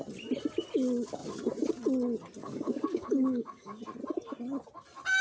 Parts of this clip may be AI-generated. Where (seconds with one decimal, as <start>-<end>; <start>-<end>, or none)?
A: 2.4-3.8